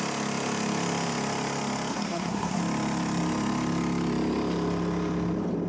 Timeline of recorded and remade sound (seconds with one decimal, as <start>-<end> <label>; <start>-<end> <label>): 0.0-1.9 recorded; 1.9-2.6 remade; 2.6-5.7 recorded